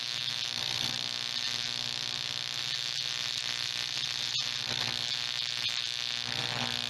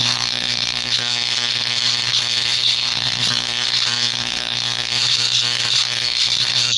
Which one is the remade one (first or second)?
second